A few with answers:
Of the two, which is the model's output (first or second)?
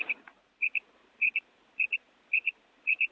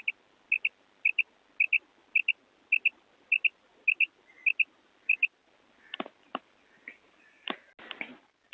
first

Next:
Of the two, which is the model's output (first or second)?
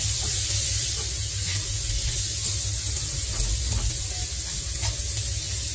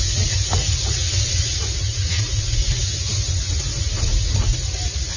second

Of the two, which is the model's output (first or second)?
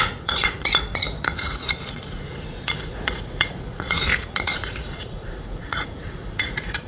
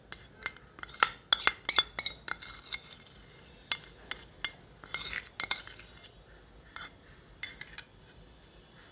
first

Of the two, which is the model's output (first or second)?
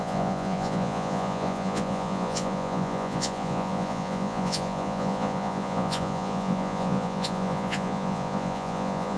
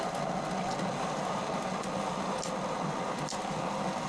first